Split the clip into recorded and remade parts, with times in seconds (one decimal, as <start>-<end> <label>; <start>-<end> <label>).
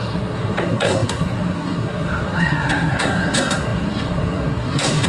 0.0-5.1 remade